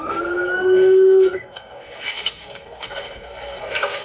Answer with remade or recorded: remade